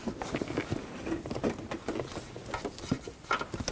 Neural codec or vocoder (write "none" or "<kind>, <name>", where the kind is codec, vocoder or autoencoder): none